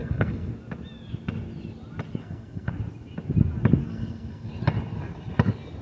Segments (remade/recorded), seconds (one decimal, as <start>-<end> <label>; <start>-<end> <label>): 0.0-0.5 remade; 0.5-2.2 recorded; 2.2-2.7 remade; 2.7-3.8 recorded; 3.8-4.5 remade; 4.5-5.8 recorded